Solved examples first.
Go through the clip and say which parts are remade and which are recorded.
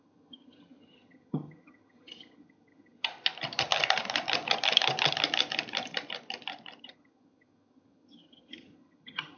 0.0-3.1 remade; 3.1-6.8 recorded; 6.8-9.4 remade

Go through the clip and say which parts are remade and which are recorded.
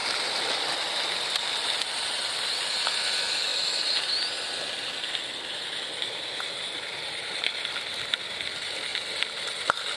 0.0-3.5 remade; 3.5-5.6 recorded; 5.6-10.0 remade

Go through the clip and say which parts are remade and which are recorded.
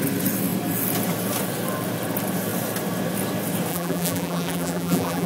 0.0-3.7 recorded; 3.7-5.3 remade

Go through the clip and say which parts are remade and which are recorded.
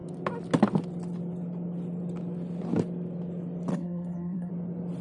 0.0-3.7 recorded; 3.7-4.5 remade; 4.5-5.0 recorded